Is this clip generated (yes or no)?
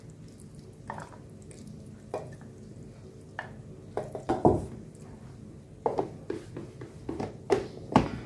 no